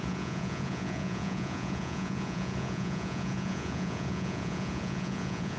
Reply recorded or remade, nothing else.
remade